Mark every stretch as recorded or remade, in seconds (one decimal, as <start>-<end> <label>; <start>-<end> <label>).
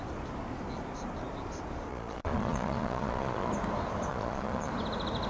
0.0-1.9 recorded; 1.9-3.5 remade; 3.5-4.1 recorded; 4.1-4.7 remade; 4.7-5.3 recorded